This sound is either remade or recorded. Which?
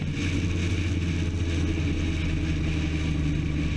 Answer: recorded